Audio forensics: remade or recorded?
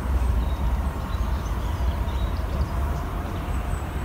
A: remade